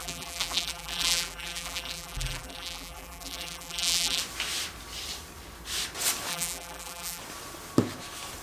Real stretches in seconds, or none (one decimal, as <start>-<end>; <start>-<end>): 4.2-6.3; 7.2-8.4